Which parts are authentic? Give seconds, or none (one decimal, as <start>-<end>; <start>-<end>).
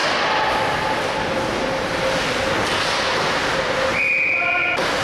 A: 0.0-5.0